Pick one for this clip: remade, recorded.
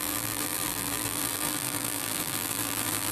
remade